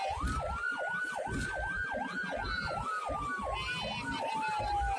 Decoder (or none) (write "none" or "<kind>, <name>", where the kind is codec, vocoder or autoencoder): none